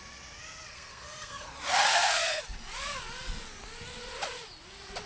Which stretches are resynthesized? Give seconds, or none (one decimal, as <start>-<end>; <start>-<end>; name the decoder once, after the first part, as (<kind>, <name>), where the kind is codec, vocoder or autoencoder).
0.7-1.5 (codec, SNAC); 1.9-2.4